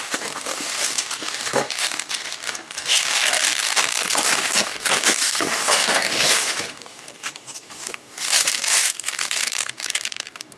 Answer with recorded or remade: remade